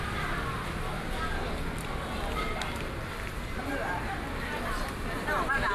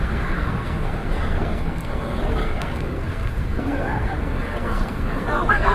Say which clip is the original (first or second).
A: first